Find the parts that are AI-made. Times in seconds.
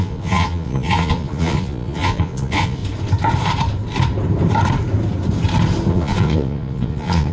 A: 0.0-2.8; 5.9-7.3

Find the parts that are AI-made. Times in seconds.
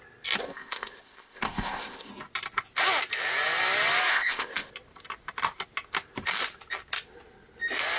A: 0.4-2.1; 4.1-4.7